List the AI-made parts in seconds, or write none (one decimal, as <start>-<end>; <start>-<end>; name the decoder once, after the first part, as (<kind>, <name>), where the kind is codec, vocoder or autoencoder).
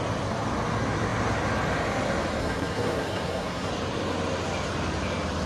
2.4-3.7 (codec, SNAC)